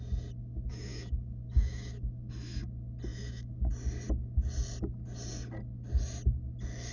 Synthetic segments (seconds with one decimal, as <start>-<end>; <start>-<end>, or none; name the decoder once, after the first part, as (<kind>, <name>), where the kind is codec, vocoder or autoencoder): 0.4-2.3 (autoencoder, DAC-VAE); 3.1-3.7